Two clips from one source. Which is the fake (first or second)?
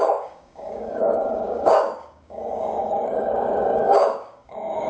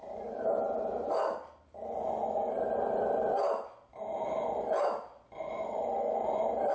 first